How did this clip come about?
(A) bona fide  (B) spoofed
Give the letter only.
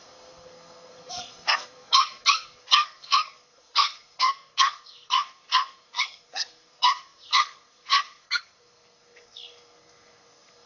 B